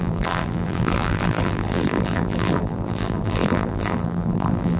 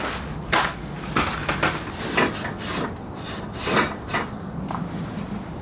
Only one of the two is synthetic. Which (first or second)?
first